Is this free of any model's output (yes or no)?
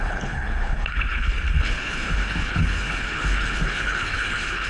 no